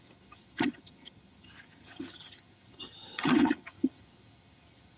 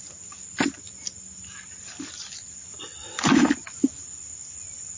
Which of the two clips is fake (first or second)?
first